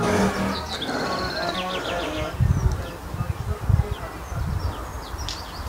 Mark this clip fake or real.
real